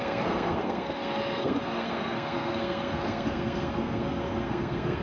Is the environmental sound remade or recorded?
remade